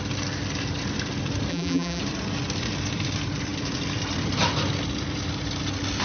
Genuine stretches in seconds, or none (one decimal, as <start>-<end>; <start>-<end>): 0.0-1.5; 2.0-6.0